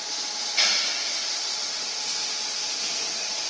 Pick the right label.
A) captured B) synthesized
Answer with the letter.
A